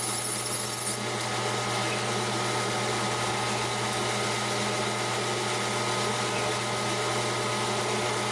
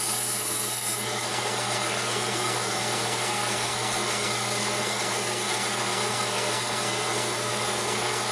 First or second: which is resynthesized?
second